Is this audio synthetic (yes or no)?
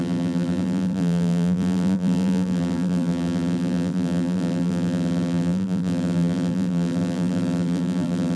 yes